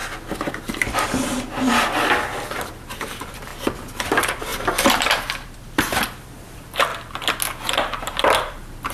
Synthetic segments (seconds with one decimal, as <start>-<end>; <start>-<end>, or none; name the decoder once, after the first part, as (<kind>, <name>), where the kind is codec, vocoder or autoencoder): 2.5-6.9 (vocoder, BigVGAN v2); 8.0-8.9